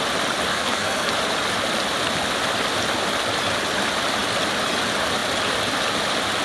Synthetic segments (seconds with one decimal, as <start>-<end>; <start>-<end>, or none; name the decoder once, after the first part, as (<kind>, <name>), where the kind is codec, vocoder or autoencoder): 0.5-1.1 (codec, SNAC)